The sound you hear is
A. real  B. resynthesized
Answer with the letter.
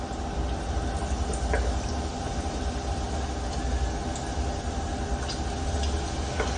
A